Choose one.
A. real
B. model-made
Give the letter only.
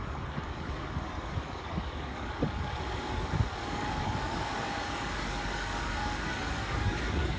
B